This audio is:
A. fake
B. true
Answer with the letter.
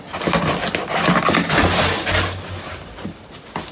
B